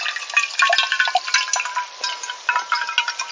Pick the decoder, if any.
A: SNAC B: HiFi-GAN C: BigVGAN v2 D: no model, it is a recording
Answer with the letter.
D